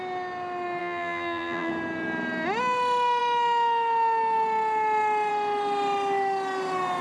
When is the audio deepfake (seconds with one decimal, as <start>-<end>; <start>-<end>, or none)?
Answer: 0.8-1.7